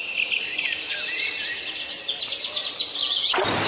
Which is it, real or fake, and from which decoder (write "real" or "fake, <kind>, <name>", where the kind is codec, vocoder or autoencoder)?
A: real